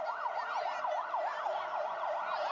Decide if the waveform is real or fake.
real